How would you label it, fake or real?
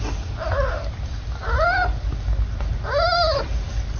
real